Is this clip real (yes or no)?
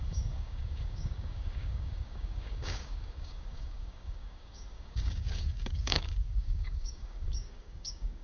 no